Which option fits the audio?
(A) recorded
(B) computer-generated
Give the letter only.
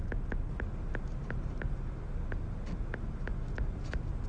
A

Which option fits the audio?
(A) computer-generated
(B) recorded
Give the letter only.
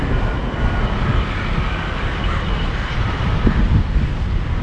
B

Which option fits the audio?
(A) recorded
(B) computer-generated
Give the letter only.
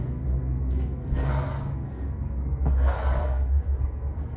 B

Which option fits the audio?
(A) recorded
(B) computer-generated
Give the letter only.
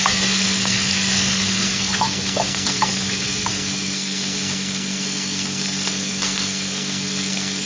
B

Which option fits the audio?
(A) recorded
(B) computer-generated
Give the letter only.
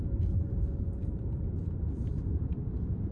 A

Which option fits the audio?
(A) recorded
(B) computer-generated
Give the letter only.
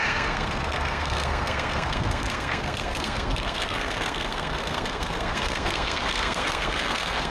B